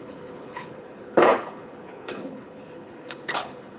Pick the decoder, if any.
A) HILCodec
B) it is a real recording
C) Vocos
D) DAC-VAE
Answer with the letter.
A